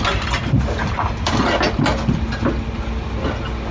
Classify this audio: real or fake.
real